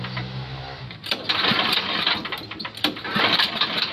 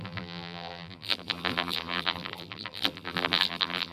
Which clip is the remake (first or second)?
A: second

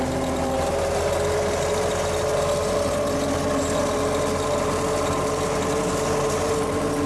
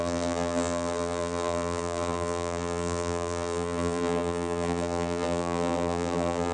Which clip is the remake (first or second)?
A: second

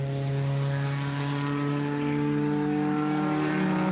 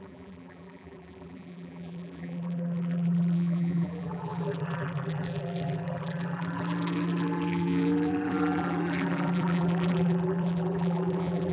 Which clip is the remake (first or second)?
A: second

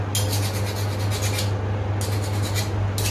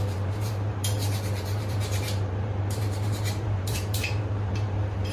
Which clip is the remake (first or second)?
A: second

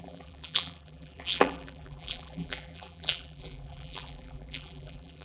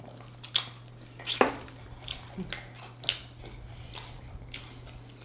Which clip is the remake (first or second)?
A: first